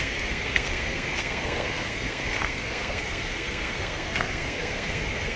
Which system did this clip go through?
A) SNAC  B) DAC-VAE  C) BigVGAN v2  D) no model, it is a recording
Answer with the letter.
A